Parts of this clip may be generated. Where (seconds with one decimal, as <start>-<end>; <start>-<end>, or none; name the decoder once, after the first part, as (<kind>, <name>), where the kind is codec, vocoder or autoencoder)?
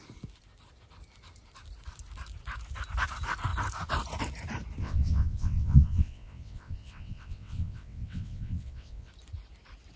4.8-9.1 (vocoder, WaveNeXt)